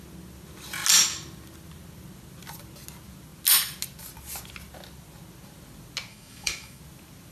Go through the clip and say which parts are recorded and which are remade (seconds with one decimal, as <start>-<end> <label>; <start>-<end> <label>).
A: 0.0-6.1 recorded; 6.1-6.8 remade; 6.8-7.3 recorded